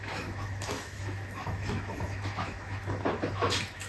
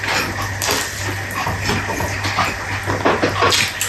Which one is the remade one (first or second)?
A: first